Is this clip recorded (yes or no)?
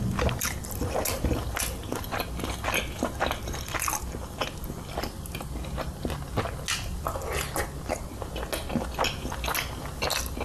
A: yes